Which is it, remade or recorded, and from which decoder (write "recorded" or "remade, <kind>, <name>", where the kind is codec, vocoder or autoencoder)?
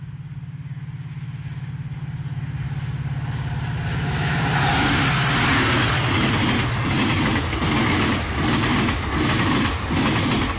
recorded